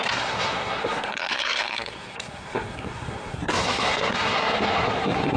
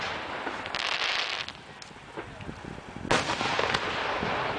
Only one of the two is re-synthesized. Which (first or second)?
first